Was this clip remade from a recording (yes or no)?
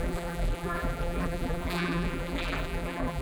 yes